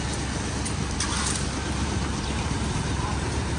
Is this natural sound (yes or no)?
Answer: yes